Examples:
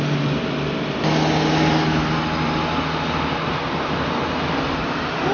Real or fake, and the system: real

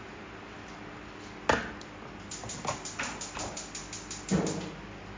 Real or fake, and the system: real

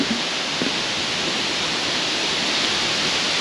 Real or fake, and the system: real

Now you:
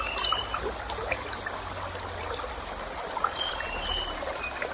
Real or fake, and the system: fake, vocoder, BigVGAN v2